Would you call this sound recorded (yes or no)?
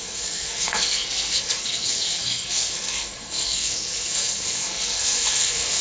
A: no